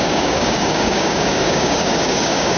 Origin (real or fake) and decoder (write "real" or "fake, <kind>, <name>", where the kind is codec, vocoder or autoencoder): fake, codec, DAC